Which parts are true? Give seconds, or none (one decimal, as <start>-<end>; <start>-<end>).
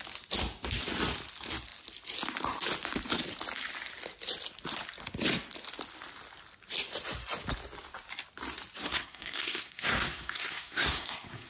0.0-8.8